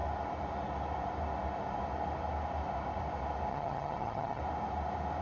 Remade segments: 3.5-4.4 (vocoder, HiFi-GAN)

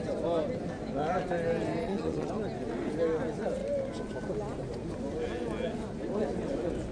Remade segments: 1.8-2.3 (vocoder, Vocos)

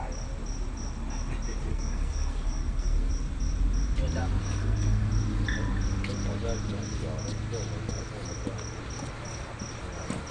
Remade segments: 1.7-3.1 (codec, SNAC); 4.4-5.1

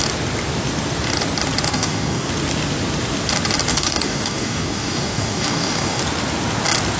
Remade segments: 1.7-2.3 (codec, DAC); 3.7-6.0

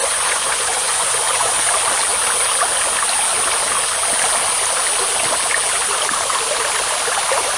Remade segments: 0.0-1.6 (vocoder, Vocos)

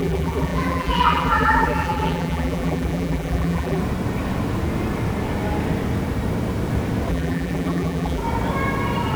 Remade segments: 0.0-3.8 (vocoder, BigVGAN v2); 7.1-8.2

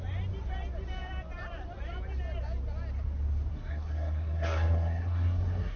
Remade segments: 3.5-5.8 (codec, SNAC)

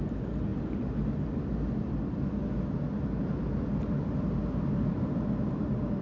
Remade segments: none